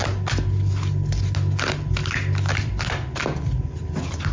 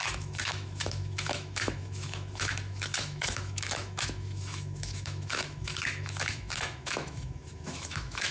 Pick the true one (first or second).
first